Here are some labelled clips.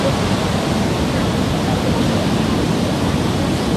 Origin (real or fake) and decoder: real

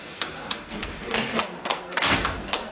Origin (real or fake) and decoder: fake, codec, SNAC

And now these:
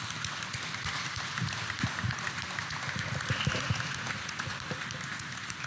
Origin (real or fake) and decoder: fake, vocoder, BigVGAN v2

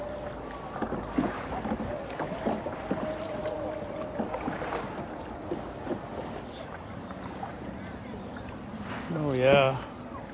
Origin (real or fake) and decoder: fake, vocoder, BigVGAN v2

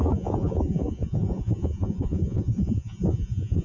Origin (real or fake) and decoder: fake, vocoder, Vocos